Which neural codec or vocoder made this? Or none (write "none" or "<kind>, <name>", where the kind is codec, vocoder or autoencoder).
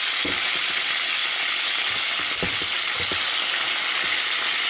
none